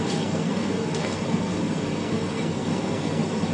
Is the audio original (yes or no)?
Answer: no